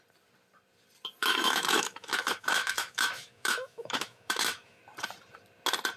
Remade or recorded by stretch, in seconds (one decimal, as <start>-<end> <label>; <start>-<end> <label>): 0.0-1.2 recorded; 1.2-4.8 remade; 4.8-6.0 recorded